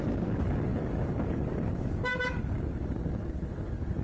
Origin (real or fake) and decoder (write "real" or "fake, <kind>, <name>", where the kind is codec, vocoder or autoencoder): fake, codec, DAC